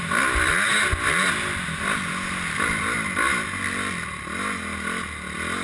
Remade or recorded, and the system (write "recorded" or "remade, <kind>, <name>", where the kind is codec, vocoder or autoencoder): recorded